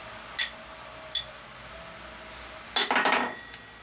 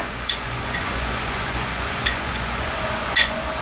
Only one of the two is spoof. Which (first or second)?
second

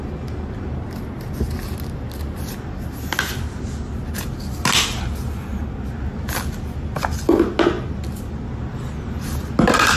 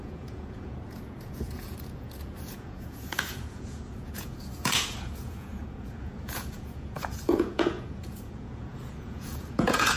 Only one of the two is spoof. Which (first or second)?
second